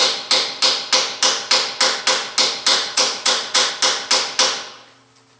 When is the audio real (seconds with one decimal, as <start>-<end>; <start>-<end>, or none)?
0.0-2.7; 3.7-5.4